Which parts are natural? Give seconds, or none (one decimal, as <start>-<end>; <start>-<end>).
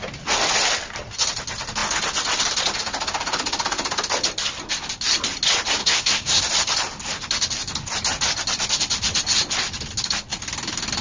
0.0-5.8; 6.4-11.0